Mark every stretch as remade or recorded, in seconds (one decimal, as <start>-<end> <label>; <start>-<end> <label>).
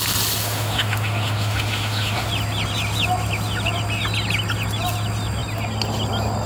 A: 0.0-0.4 recorded; 0.4-2.3 remade; 2.3-6.5 recorded